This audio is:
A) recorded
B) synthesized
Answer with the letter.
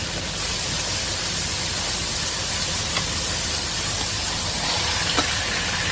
A